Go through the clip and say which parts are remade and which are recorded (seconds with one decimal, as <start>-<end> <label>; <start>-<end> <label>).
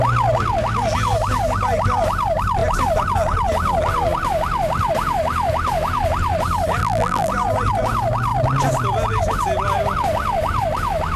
0.0-6.8 recorded; 6.8-7.3 remade; 7.3-11.2 recorded